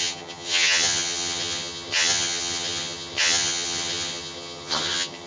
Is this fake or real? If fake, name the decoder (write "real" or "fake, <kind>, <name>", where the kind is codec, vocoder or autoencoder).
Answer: fake, vocoder, HiFi-GAN